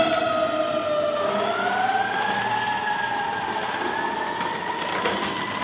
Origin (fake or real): real